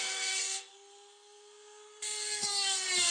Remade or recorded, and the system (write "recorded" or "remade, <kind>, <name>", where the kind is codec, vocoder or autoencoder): remade, codec, SNAC